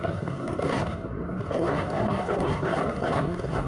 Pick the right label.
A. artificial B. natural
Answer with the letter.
A